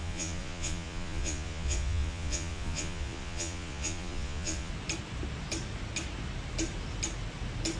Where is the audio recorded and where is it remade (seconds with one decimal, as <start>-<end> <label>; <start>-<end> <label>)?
0.0-4.7 remade; 4.7-7.8 recorded